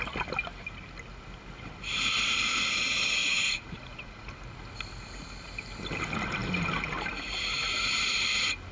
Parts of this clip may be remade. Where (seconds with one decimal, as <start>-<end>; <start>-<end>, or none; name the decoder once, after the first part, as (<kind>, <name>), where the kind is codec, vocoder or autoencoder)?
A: 3.2-4.3 (vocoder, Vocos)